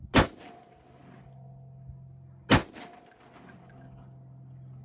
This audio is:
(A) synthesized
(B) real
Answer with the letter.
B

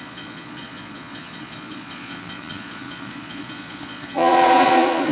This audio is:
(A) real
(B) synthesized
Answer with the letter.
B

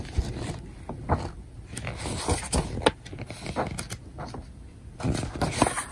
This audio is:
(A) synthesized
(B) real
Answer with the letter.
B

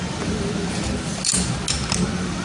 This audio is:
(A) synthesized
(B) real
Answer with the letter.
B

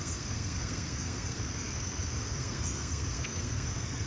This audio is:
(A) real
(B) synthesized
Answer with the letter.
B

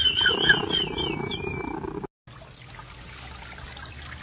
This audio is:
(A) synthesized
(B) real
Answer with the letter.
B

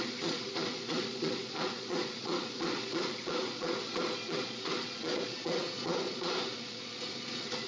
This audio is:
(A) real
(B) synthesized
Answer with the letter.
B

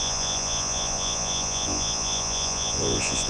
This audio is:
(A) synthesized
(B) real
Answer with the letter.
A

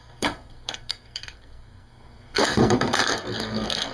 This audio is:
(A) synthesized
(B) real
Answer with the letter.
A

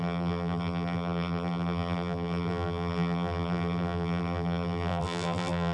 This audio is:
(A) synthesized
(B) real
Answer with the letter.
A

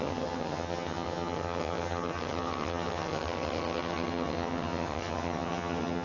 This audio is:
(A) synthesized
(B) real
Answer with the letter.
A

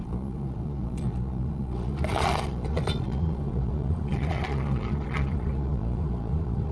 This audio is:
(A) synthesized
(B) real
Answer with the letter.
A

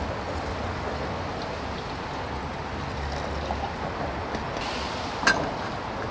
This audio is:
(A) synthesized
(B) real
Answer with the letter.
B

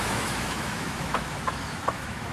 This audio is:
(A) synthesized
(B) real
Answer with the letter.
A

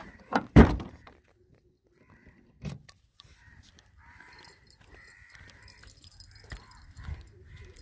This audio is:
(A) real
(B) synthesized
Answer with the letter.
B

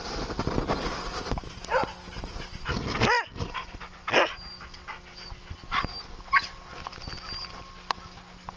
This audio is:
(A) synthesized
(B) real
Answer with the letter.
B